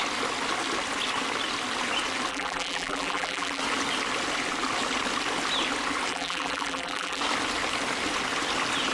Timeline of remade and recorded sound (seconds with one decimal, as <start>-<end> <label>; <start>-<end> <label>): 0.0-2.3 recorded; 2.3-3.6 remade; 3.6-6.1 recorded; 6.1-7.2 remade; 7.2-8.9 recorded